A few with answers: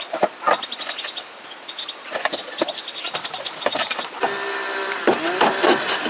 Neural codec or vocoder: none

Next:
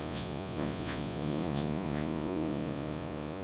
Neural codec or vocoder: vocoder, Vocos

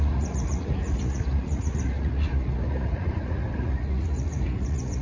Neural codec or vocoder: vocoder, Vocos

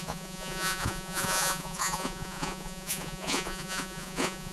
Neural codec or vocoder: vocoder, Vocos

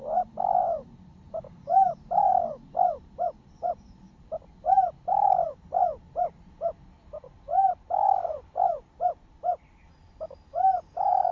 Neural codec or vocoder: none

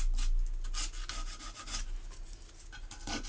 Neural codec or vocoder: none